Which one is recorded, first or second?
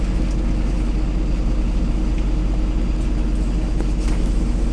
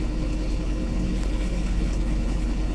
first